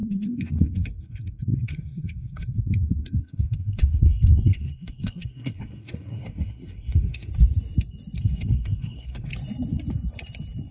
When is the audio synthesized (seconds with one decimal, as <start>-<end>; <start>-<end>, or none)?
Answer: 0.0-7.3; 8.2-9.3